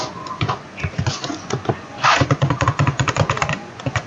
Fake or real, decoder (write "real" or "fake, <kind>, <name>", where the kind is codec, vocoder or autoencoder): fake, vocoder, Vocos